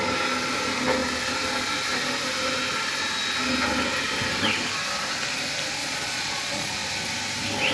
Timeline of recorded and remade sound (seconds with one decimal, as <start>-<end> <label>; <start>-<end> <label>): 0.0-5.8 recorded; 5.8-6.7 remade; 6.7-7.7 recorded